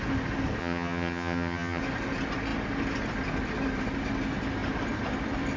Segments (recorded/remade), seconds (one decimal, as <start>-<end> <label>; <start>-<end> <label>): 0.0-0.6 recorded; 0.6-1.8 remade; 1.8-5.6 recorded